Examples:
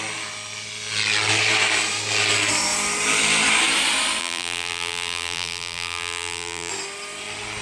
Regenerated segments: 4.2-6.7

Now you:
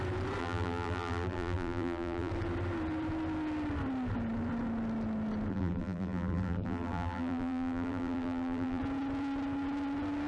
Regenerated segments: 0.4-2.3; 5.5-8.8